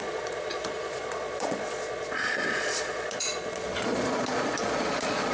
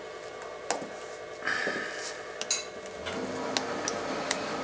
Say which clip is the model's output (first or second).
first